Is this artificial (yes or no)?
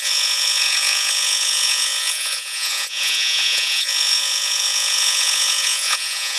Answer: yes